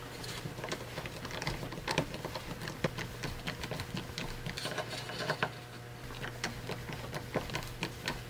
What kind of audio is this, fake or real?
real